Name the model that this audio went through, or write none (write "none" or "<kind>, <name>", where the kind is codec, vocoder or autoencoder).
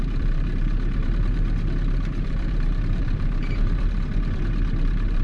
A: vocoder, BigVGAN v2